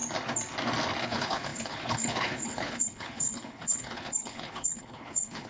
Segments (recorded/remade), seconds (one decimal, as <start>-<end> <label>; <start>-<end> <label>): 0.0-1.0 recorded; 1.0-5.5 remade